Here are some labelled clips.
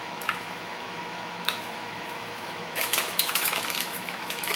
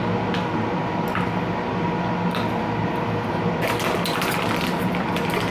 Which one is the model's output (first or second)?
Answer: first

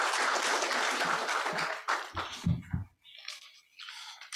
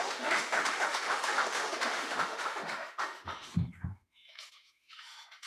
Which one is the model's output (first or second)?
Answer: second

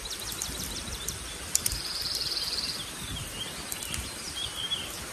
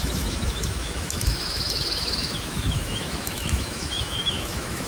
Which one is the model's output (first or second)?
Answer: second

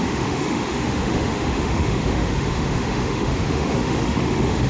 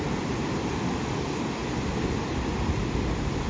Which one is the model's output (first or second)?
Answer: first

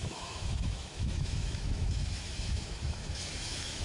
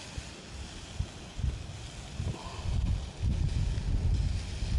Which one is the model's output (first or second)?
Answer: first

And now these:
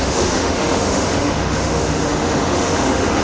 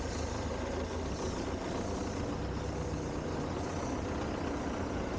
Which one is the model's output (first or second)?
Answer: first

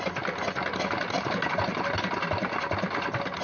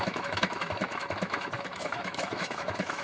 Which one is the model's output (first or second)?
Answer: second